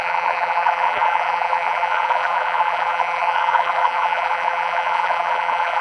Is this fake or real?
fake